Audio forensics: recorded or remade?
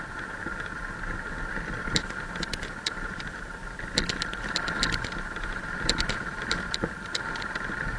remade